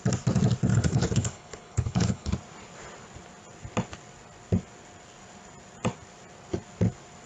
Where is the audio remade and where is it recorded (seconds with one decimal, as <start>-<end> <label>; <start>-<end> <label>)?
0.0-0.7 recorded; 0.7-2.3 remade; 2.3-7.3 recorded